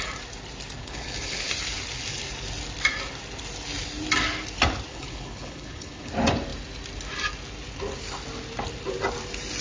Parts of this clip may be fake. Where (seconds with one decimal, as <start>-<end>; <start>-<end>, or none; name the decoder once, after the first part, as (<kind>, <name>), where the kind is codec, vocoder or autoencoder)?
0.8-1.5 (codec, HILCodec); 4.9-6.1